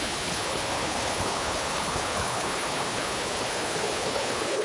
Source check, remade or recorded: remade